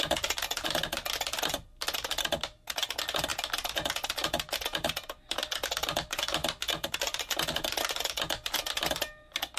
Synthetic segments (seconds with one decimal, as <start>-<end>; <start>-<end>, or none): none